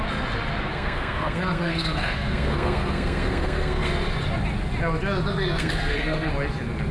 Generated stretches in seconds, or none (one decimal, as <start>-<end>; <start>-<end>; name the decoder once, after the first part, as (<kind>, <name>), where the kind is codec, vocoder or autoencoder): 0.7-3.9 (codec, SNAC); 5.3-6.3